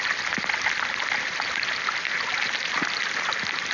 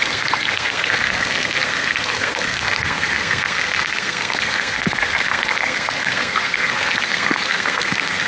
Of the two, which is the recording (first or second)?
first